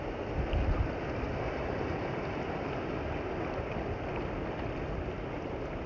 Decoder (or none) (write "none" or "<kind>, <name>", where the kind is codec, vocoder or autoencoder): none